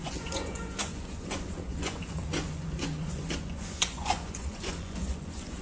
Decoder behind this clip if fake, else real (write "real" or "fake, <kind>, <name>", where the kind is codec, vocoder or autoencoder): fake, vocoder, Vocos